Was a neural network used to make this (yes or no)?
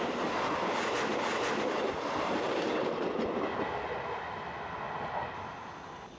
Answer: no